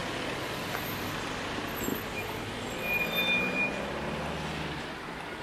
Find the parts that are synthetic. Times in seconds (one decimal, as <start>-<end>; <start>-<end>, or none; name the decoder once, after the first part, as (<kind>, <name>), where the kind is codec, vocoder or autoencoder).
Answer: none